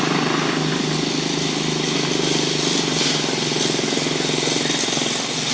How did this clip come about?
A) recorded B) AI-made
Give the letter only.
A